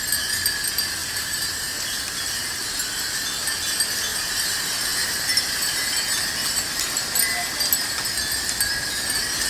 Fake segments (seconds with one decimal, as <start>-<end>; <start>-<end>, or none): 1.0-2.6; 4.1-5.9